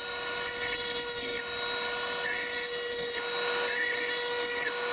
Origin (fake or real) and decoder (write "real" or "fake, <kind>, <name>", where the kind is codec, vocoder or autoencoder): real